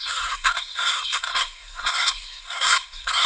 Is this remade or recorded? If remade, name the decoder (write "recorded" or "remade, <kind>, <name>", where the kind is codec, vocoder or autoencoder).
remade, codec, SNAC